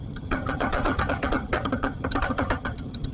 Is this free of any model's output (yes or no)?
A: no